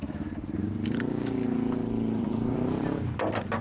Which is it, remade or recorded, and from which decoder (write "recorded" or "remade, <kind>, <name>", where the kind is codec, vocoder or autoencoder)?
recorded